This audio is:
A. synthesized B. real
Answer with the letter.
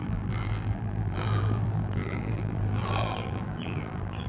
A